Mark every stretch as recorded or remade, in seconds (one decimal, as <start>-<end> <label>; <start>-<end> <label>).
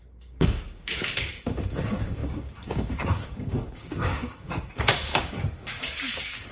0.0-6.5 remade